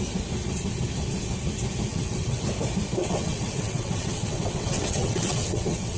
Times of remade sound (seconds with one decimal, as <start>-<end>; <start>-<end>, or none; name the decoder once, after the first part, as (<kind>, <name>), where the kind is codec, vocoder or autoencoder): 1.9-2.4 (vocoder, WaveNeXt); 3.0-6.0